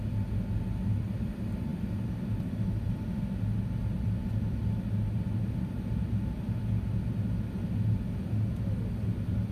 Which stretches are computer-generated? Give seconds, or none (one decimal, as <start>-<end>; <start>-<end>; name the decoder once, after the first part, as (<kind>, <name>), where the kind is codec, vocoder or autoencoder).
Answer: none